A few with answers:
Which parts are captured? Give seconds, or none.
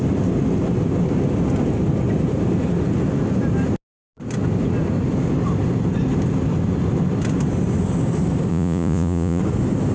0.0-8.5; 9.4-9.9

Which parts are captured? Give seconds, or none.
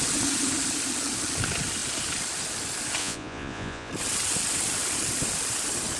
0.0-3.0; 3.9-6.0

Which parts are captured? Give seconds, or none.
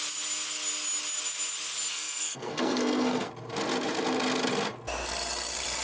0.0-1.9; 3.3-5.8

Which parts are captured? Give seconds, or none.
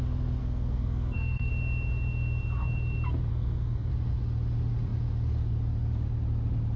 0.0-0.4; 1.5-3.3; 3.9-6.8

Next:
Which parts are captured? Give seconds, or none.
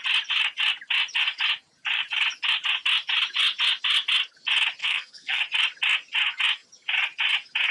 0.0-4.8; 5.4-7.7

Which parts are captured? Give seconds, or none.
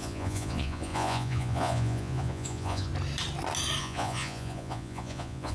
2.9-3.8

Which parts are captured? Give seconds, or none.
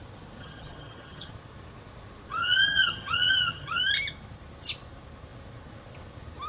0.0-0.4; 1.3-2.3; 3.8-6.5